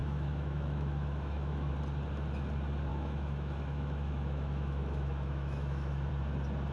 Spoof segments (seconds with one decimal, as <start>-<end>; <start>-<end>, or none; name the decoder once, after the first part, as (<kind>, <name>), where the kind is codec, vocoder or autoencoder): 0.0-1.7 (autoencoder, DAC-VAE); 2.9-6.1

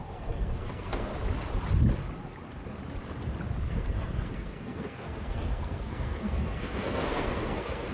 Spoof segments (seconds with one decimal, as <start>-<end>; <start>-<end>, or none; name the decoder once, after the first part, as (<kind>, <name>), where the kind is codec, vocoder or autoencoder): 0.0-1.1 (codec, SNAC); 3.6-7.9